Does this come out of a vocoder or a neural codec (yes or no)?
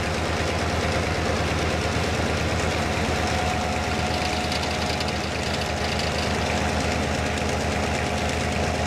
no